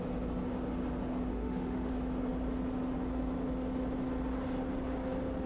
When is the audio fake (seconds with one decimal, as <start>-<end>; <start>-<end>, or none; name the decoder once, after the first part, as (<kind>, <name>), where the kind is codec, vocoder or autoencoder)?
1.3-1.9 (autoencoder, DAC-VAE)